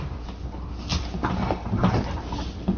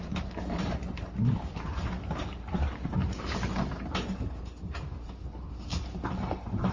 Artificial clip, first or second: second